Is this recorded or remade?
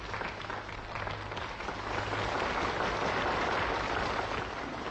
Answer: recorded